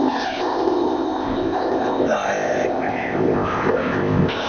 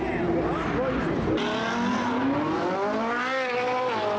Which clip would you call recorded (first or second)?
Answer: second